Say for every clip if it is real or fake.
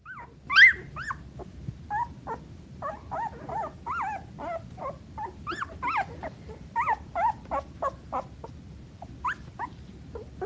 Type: real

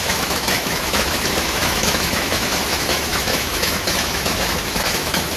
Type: fake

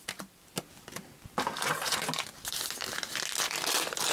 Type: real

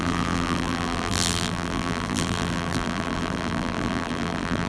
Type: fake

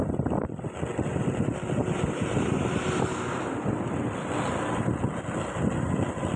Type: real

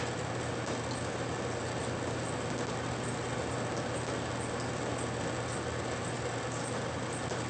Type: real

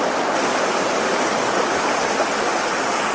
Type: real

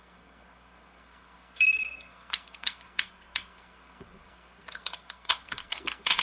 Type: fake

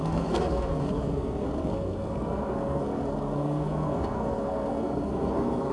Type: fake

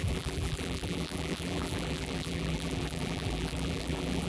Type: fake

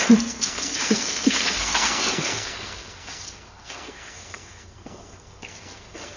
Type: fake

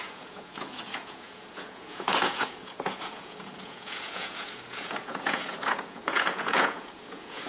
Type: fake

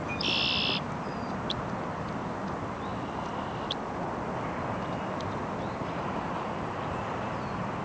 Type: real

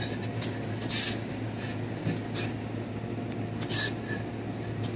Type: real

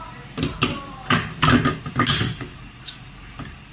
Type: real